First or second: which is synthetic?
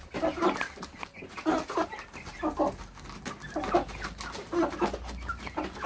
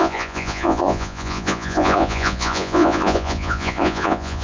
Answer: second